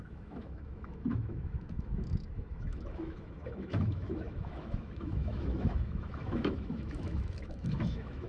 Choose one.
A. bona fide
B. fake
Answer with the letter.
B